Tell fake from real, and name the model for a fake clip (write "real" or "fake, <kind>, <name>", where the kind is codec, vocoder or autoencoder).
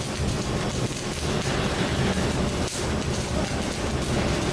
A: real